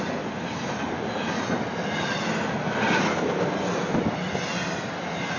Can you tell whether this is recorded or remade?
recorded